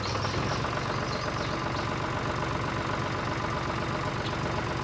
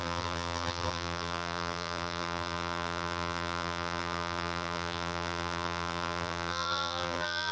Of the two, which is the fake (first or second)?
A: second